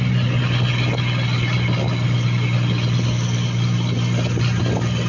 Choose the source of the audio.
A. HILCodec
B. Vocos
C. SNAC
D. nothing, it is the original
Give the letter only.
D